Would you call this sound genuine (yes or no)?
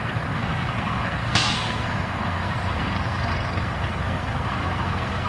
no